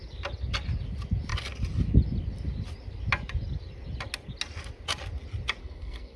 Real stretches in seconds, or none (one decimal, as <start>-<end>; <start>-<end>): 0.0-5.6